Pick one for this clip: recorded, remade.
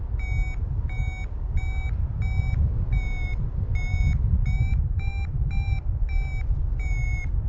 recorded